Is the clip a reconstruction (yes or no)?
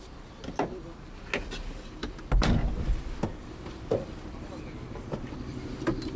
no